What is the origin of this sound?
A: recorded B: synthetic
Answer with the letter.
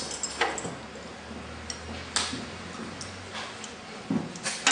A